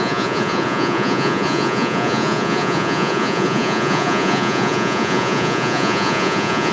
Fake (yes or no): yes